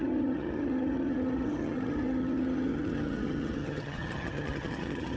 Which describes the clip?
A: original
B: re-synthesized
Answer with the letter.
B